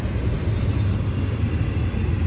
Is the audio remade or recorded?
recorded